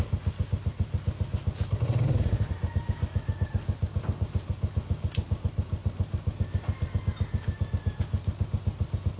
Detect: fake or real real